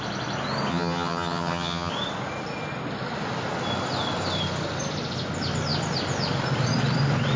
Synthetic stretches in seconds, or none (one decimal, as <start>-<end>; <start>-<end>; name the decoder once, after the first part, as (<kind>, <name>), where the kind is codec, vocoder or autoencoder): 0.7-1.9 (vocoder, HiFi-GAN)